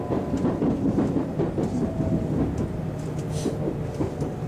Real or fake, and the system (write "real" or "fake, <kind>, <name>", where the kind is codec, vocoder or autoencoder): real